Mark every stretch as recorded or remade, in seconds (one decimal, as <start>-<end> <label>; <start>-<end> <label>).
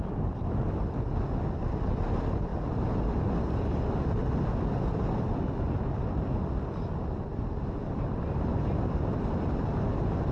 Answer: 0.0-10.3 recorded